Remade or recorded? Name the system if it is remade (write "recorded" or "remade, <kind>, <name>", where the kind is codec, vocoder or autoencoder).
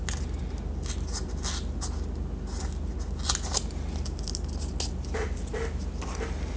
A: recorded